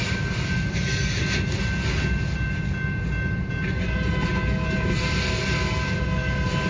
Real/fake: real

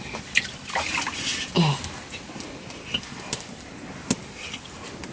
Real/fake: real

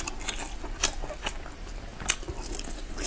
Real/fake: real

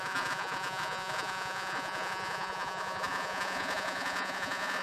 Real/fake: fake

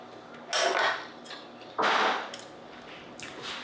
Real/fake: real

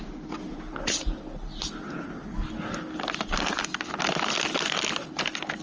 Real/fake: real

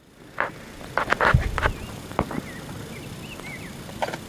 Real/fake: real